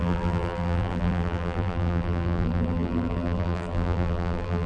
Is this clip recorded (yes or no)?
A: no